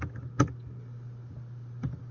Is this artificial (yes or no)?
no